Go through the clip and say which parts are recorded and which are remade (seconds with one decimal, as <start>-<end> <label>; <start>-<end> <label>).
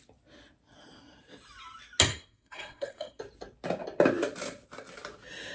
0.0-2.1 recorded; 2.1-3.2 remade; 3.2-5.5 recorded